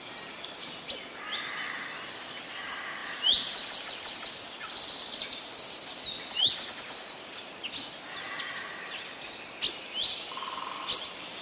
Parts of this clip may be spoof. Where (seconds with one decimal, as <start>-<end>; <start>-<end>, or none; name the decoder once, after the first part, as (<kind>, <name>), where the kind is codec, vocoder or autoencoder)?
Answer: none